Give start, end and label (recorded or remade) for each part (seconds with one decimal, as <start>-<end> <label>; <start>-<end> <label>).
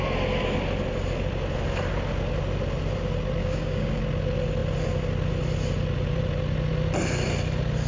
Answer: 0.0-3.4 recorded; 3.4-4.0 remade; 4.0-7.9 recorded